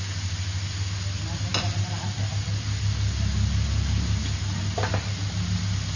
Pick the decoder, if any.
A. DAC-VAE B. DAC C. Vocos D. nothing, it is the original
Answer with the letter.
D